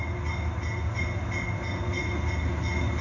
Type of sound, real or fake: real